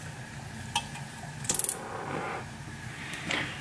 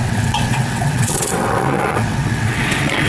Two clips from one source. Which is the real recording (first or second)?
first